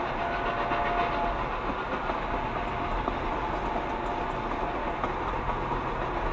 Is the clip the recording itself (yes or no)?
yes